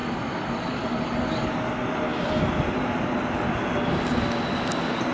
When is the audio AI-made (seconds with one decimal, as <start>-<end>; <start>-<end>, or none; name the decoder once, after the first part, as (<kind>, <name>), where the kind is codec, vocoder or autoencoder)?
0.0-1.5 (codec, DAC)